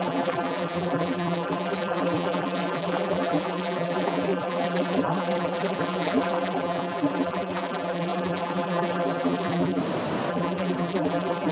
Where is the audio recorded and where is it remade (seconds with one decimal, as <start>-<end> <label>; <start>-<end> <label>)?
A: 0.0-9.8 remade; 9.8-10.3 recorded; 10.3-11.5 remade